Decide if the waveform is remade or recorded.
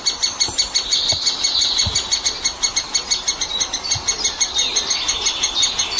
recorded